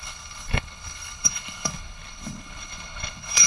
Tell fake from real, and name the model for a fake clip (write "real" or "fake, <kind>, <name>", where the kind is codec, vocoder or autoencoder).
fake, codec, HILCodec